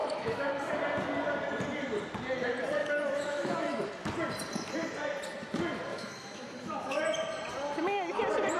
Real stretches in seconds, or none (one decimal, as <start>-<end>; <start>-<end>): 0.5-2.8; 3.9-5.9; 7.0-8.6